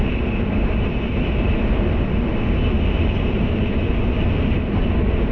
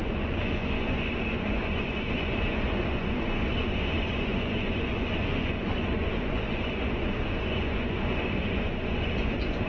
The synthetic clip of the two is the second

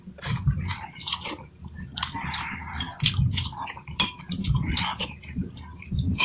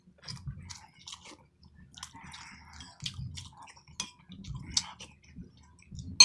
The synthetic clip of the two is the first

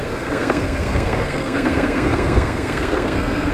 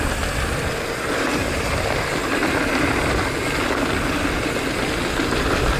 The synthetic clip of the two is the first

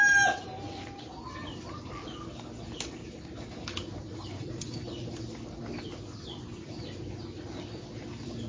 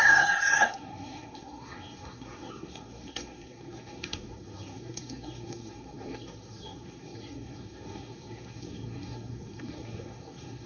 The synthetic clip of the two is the second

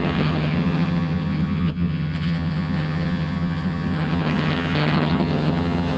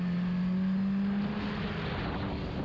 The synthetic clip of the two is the first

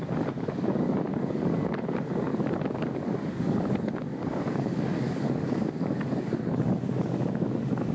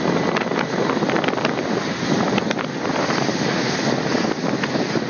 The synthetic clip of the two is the first